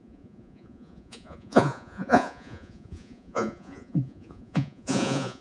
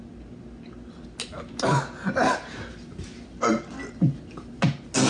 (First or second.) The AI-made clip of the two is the first